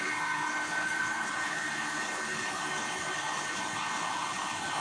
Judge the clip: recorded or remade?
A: remade